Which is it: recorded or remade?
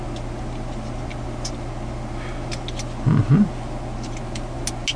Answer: recorded